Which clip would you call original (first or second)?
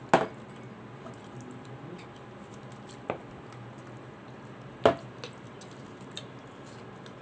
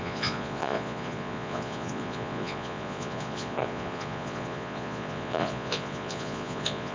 first